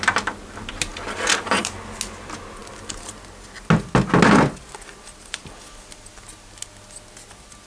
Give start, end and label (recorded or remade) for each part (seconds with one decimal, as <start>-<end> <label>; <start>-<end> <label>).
0.0-7.7 recorded